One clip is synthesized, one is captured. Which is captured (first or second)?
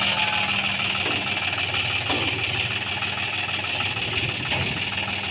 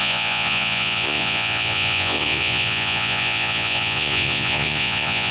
first